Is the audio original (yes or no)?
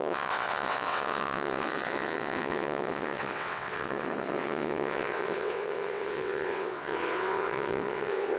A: no